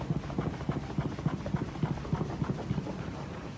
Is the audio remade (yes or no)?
no